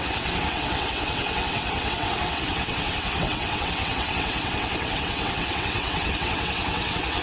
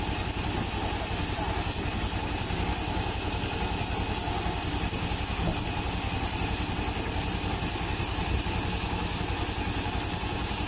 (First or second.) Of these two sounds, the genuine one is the second